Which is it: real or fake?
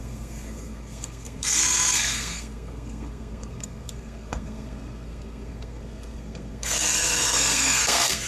fake